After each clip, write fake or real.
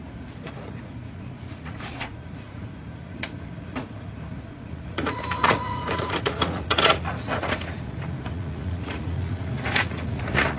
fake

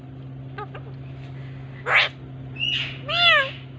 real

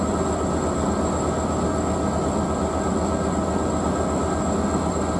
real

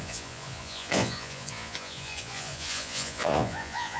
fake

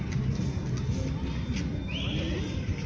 real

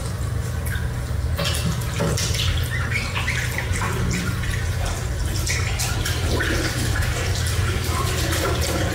real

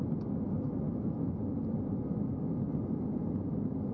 real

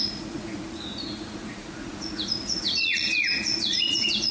fake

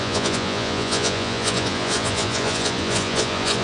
fake